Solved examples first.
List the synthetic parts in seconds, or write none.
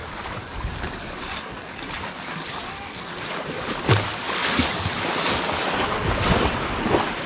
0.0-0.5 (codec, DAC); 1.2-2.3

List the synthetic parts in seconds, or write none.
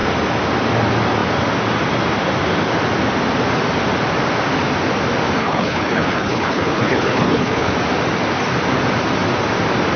5.4-7.7 (codec, HILCodec)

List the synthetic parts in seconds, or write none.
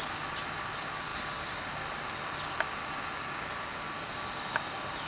none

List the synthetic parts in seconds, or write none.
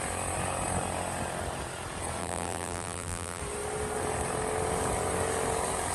2.2-3.4 (vocoder, BigVGAN v2)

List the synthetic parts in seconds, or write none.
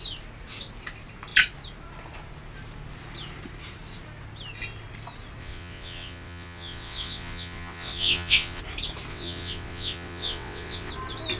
5.4-8.6 (vocoder, WaveNeXt); 9.1-10.9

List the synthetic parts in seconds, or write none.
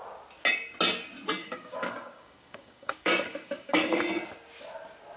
1.4-4.0 (codec, DAC)